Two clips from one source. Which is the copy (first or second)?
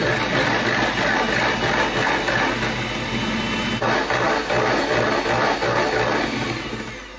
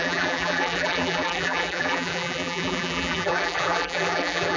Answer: second